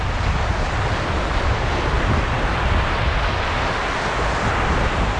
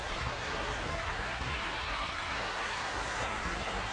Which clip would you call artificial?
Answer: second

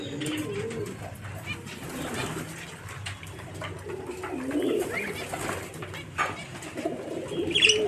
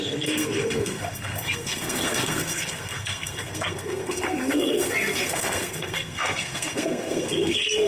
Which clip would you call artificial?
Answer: second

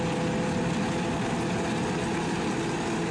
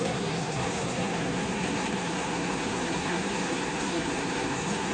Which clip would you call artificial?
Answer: second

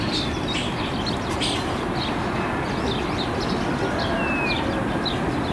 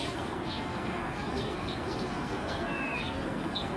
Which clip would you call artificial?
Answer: second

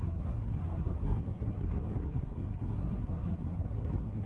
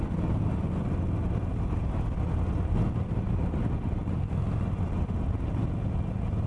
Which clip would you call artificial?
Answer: first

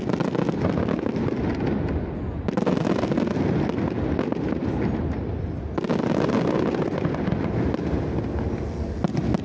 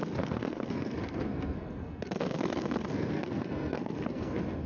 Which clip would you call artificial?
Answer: second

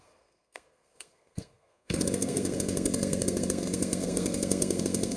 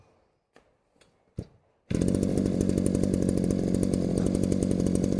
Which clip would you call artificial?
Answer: first